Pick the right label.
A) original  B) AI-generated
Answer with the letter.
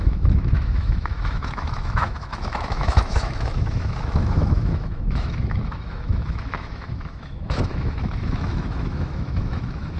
B